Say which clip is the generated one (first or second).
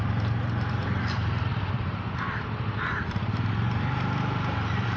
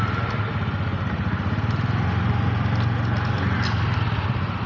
first